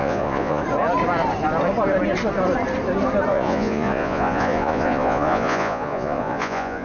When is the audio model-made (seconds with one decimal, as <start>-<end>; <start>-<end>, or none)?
0.0-0.6; 3.3-6.8

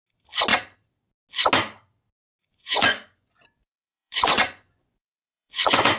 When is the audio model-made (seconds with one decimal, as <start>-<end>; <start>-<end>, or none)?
2.4-6.0

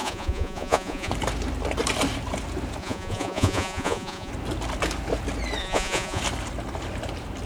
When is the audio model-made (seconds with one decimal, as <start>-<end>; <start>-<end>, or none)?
0.0-1.1; 2.8-4.3; 5.6-6.2

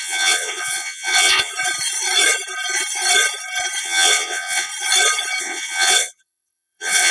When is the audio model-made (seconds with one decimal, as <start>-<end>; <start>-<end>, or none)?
0.0-1.5; 3.8-4.7; 5.4-7.1

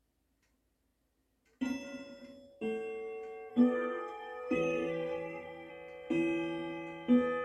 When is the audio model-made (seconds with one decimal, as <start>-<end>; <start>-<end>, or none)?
3.5-5.7

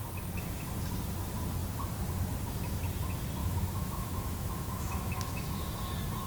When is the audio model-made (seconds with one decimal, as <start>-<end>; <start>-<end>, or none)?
3.4-5.7